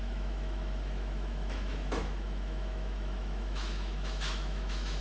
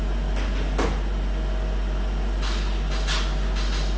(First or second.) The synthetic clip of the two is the first